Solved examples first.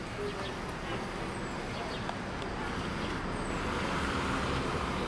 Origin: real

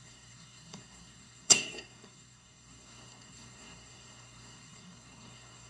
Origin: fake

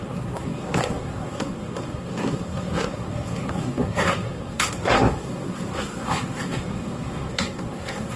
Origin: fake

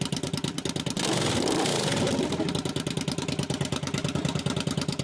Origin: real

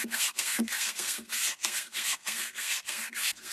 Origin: fake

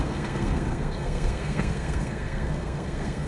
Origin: fake